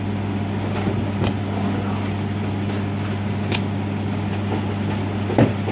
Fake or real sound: real